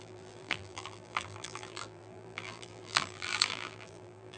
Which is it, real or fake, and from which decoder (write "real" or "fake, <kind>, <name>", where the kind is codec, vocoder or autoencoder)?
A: fake, vocoder, BigVGAN v2